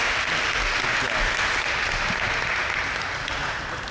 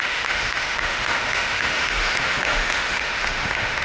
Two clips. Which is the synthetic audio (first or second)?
second